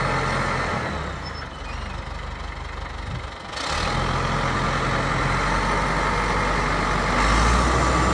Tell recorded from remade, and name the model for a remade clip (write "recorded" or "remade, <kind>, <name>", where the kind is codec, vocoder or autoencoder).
recorded